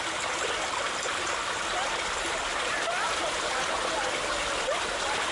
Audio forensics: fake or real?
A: real